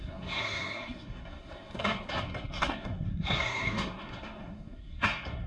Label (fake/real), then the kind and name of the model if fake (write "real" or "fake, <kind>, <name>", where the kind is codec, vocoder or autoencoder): fake, codec, SNAC